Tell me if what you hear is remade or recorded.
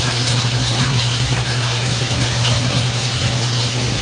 remade